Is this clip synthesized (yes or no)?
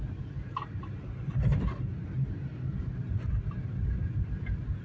no